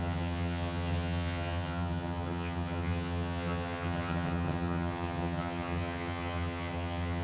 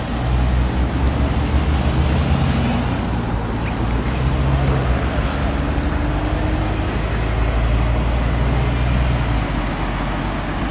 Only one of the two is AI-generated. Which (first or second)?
first